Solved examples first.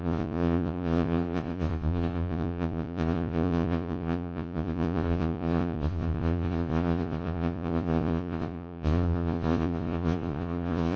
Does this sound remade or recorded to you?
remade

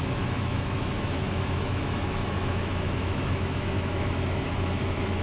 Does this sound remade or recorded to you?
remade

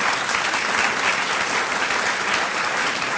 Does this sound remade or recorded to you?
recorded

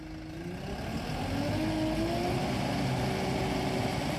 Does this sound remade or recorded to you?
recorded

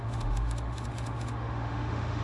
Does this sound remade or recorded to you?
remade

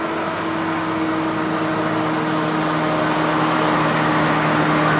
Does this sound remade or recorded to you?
recorded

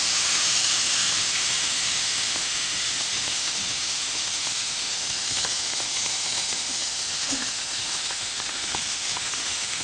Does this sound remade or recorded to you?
remade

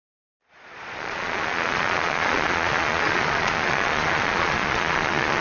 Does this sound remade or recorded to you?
remade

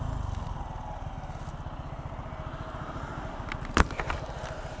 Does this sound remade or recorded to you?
recorded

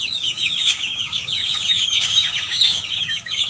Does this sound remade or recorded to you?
remade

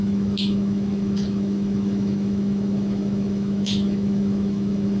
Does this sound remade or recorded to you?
remade